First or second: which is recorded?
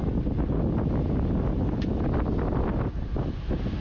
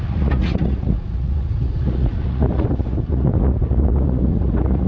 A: first